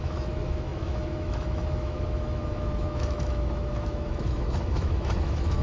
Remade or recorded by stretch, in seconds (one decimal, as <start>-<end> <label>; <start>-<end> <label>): 0.0-5.6 remade